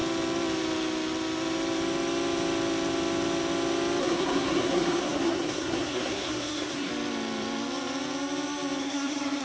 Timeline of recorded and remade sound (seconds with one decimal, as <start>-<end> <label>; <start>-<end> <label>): 0.0-4.0 recorded; 4.0-6.9 remade; 6.9-8.8 recorded; 8.8-9.4 remade